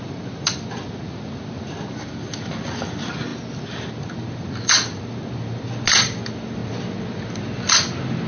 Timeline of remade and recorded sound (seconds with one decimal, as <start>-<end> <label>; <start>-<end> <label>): 0.0-8.3 recorded